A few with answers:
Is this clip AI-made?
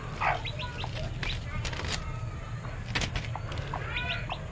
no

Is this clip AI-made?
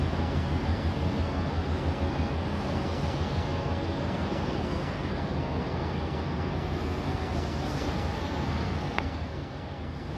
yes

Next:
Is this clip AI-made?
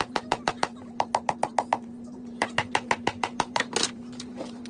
yes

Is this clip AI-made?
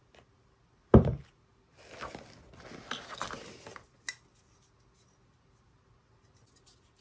no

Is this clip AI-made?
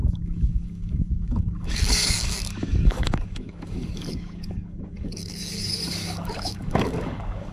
yes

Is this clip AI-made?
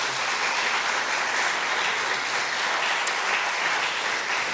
no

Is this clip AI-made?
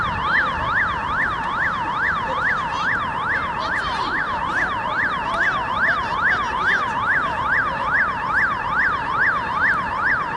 yes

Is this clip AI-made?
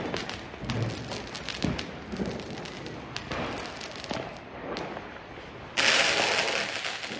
no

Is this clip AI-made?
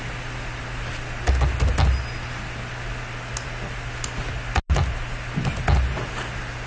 no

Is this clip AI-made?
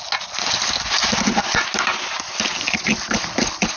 no